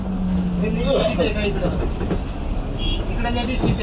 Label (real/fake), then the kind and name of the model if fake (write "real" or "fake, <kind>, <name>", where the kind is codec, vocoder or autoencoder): real